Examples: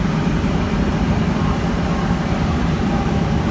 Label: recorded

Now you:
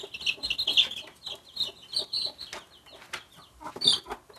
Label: recorded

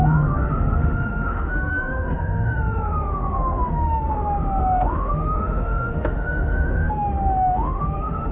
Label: remade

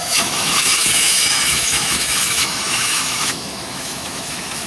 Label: remade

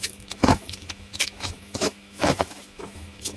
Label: remade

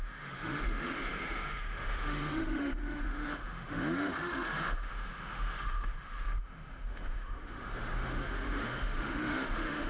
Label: remade